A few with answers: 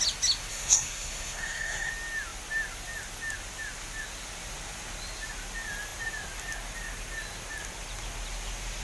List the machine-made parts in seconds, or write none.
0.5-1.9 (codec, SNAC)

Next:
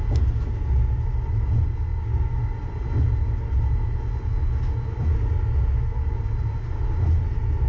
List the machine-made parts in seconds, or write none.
none

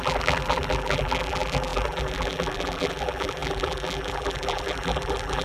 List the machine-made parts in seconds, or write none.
0.0-5.4 (vocoder, BigVGAN v2)

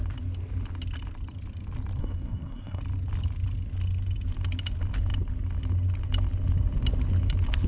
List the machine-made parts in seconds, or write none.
2.0-2.8 (codec, SNAC)